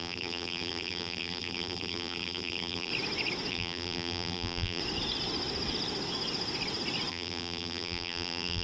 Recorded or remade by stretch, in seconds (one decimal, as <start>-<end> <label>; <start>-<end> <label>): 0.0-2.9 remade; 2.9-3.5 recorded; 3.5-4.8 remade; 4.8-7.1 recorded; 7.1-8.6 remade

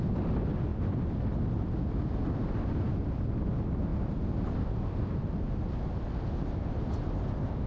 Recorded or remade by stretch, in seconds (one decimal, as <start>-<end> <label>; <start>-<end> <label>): 0.0-7.7 recorded

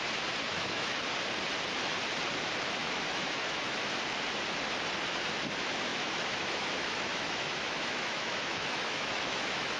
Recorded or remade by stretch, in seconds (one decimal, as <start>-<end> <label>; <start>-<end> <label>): 0.0-0.5 recorded; 0.5-1.0 remade; 1.0-2.8 recorded; 2.8-3.9 remade; 3.9-5.9 recorded; 5.9-9.8 remade

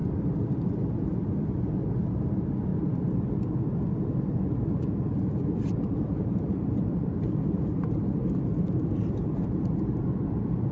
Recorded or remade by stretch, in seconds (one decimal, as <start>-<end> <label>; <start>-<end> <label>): 0.0-2.7 recorded; 2.7-3.3 remade; 3.3-6.2 recorded; 6.2-10.0 remade; 10.0-10.7 recorded

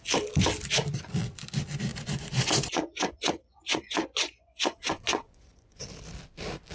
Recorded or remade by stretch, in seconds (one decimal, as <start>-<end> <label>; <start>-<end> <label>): 0.0-1.9 recorded; 1.9-5.8 remade; 5.8-6.7 recorded

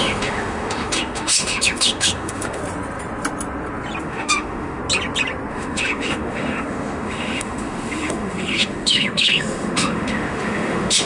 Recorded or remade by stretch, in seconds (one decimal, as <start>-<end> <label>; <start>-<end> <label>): 0.0-2.6 remade; 2.6-4.0 recorded; 4.0-4.8 remade; 4.8-5.5 recorded; 5.5-11.1 remade